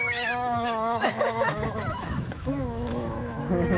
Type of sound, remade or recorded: remade